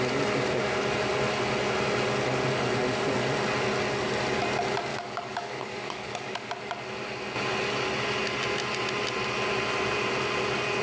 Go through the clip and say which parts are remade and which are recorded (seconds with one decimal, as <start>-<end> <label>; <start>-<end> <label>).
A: 0.0-4.9 recorded; 4.9-6.5 remade; 6.5-10.8 recorded